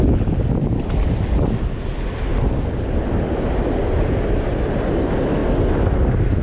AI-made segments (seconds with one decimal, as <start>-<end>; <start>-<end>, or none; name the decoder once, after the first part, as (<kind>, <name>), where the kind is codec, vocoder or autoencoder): none